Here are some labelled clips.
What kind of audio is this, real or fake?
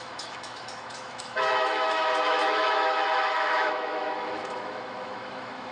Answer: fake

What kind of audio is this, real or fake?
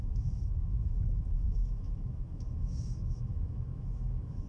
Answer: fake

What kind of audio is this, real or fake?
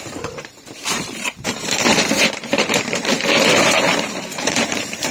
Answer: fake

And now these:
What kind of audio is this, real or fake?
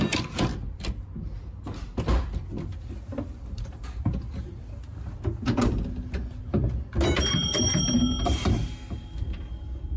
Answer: real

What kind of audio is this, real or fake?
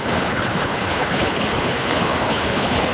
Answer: fake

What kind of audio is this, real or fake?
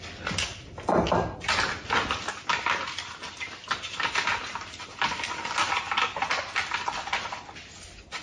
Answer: real